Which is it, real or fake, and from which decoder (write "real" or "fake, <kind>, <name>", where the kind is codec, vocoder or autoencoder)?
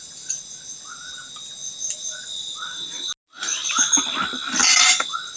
real